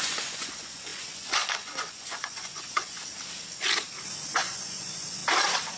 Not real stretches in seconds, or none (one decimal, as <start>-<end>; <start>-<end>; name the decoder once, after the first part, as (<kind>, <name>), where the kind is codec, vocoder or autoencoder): 0.0-3.0 (vocoder, Vocos); 4.4-5.2